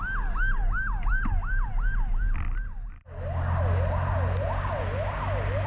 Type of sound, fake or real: real